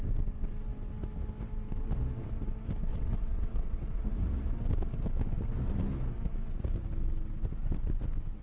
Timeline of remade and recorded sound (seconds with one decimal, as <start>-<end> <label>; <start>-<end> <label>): 0.0-2.9 recorded; 2.9-4.3 remade; 4.3-8.4 recorded